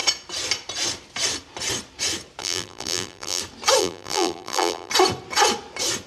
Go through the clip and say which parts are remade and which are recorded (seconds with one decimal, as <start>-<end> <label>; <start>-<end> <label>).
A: 0.0-2.4 recorded; 2.4-3.4 remade; 3.4-3.8 recorded; 3.8-4.9 remade; 4.9-6.1 recorded